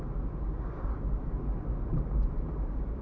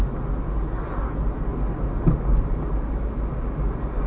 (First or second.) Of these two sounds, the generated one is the first